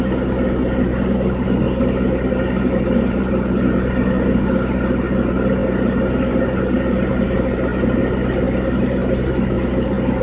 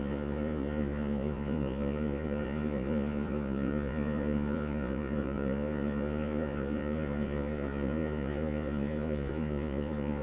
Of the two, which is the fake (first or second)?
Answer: second